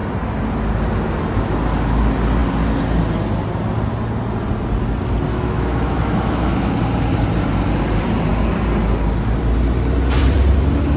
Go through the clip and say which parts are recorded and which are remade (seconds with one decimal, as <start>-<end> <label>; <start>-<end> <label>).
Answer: 0.0-5.3 recorded; 5.3-6.7 remade; 6.7-11.0 recorded